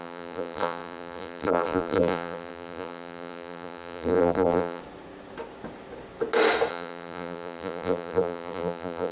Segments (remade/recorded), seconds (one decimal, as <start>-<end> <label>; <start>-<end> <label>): 0.0-4.8 remade; 4.8-6.7 recorded; 6.7-9.1 remade